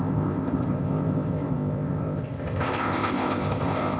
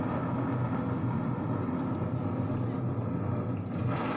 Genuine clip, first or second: second